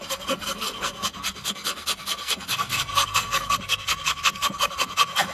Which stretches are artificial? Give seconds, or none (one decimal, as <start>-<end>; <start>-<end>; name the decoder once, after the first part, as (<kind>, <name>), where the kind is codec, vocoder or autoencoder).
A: 0.0-5.3 (codec, SNAC)